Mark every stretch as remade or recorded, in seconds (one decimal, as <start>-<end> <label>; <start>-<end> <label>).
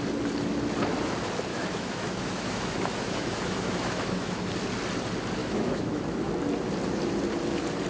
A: 0.0-1.5 recorded; 1.5-4.5 remade; 4.5-5.4 recorded; 5.4-6.3 remade; 6.3-7.9 recorded